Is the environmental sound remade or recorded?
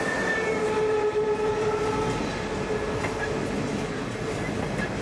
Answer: recorded